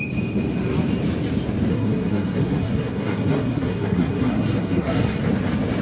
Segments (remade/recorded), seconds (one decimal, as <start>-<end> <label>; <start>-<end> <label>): 0.0-1.7 recorded; 1.7-5.2 remade; 5.2-5.8 recorded